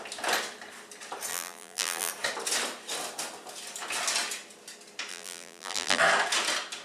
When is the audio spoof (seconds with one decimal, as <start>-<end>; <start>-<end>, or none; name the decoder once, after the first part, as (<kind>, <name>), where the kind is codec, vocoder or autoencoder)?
1.3-2.1 (vocoder, BigVGAN v2); 5.1-6.0